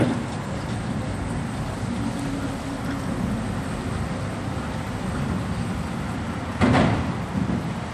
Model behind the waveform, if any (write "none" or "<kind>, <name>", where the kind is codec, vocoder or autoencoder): none